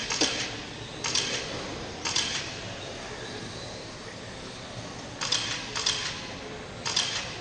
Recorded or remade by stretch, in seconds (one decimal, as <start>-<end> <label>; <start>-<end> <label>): 0.0-0.6 recorded; 0.6-7.4 remade